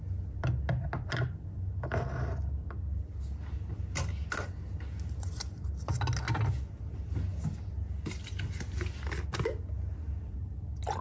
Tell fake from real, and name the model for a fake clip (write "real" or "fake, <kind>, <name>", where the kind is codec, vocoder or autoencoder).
real